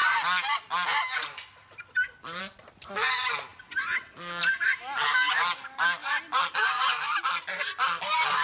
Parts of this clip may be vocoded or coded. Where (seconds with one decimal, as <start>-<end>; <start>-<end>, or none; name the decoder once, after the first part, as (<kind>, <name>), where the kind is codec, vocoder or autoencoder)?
none